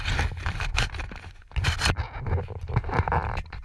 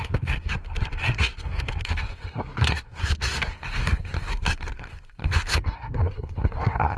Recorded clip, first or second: first